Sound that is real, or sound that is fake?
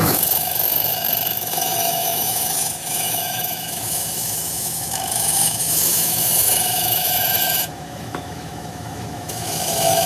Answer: fake